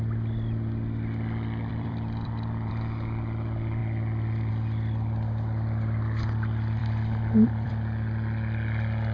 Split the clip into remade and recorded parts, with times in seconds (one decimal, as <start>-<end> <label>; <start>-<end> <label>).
0.0-1.7 recorded; 1.7-2.7 remade; 2.7-6.8 recorded; 6.8-7.7 remade; 7.7-9.1 recorded